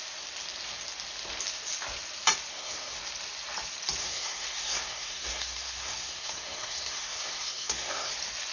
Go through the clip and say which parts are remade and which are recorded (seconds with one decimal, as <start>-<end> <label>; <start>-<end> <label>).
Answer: 0.0-2.5 recorded; 2.5-3.0 remade; 3.0-4.0 recorded; 4.0-8.1 remade; 8.1-8.5 recorded